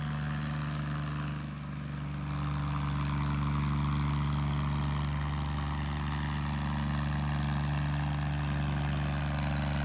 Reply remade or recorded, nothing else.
recorded